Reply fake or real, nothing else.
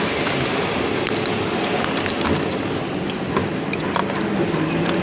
real